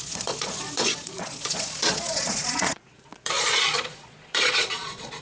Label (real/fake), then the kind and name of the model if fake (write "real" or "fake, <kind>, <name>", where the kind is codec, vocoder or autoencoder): fake, vocoder, Vocos